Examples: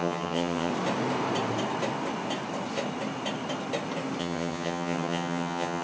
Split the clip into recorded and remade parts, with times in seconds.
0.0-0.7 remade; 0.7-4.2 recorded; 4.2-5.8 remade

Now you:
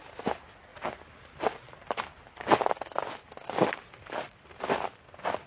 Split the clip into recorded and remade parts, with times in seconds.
0.0-5.5 recorded

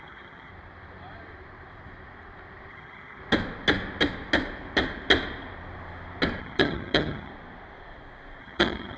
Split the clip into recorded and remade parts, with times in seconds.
0.0-0.5 remade; 0.5-2.7 recorded; 2.7-3.2 remade; 3.2-6.4 recorded; 6.4-7.3 remade; 7.3-8.4 recorded; 8.4-9.0 remade

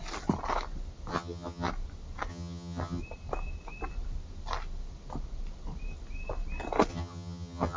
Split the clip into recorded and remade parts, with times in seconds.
0.0-1.1 recorded; 1.1-1.7 remade; 1.7-2.3 recorded; 2.3-3.0 remade; 3.0-6.9 recorded; 6.9-7.8 remade